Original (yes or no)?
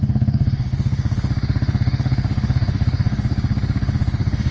no